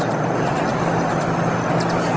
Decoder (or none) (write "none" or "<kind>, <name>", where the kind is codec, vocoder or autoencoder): none